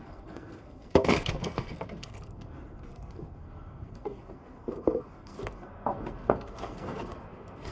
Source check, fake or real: fake